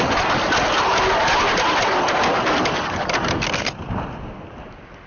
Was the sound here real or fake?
real